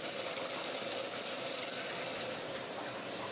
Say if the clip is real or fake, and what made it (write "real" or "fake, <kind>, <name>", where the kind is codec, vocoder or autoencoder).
real